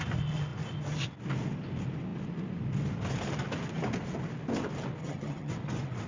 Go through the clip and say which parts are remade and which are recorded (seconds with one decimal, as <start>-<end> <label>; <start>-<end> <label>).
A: 0.0-5.0 recorded; 5.0-5.5 remade; 5.5-6.1 recorded